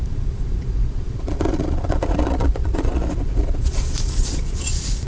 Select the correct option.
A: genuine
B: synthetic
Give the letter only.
B